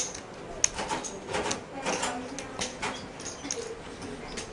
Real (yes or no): yes